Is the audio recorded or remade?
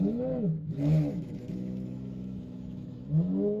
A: remade